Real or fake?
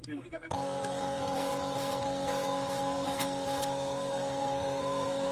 fake